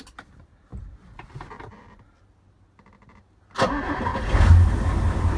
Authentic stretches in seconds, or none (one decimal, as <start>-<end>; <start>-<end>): 0.0-4.1; 4.7-5.4